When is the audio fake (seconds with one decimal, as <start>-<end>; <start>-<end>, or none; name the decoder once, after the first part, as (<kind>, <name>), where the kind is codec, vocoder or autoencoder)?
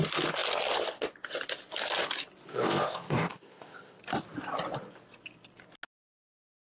2.5-4.0 (codec, ZipCodec)